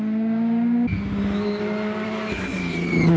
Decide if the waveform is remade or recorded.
recorded